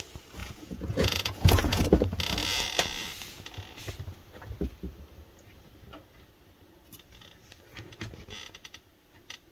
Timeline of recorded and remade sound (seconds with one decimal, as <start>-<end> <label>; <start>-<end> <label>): 0.0-0.4 recorded; 0.4-1.8 remade; 1.8-9.5 recorded